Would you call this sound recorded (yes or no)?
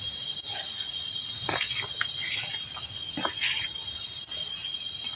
yes